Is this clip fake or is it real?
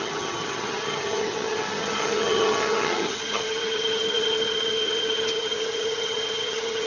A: fake